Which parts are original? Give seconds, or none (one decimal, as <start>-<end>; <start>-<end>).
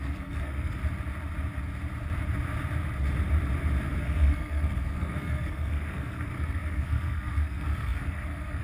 0.8-4.0